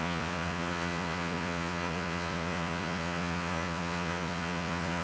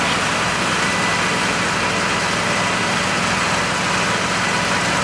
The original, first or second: second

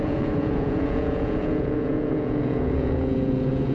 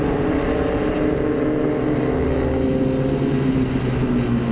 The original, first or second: second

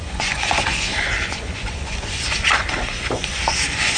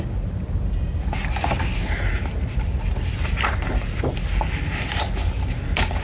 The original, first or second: second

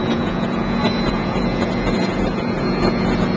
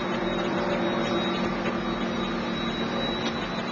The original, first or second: second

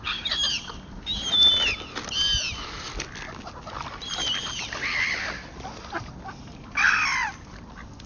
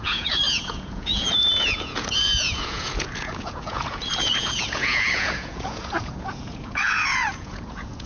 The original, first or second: first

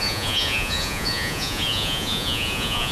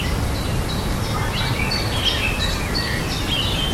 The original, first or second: second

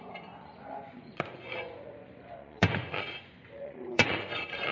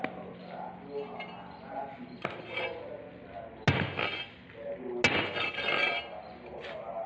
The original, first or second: second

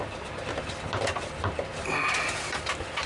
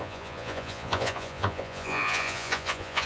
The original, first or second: first